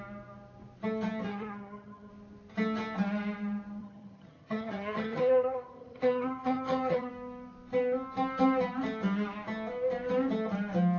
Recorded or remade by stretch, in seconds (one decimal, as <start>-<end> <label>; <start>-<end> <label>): 0.0-1.3 recorded; 1.3-2.1 remade; 2.1-3.8 recorded; 3.8-7.1 remade; 7.1-11.0 recorded